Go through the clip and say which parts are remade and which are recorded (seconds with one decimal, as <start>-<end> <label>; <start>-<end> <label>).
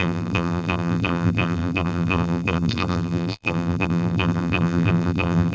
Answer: 0.0-5.5 remade